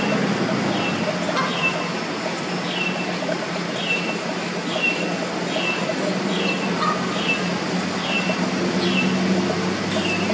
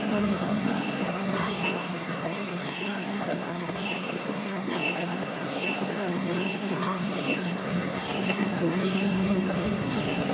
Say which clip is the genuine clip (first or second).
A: first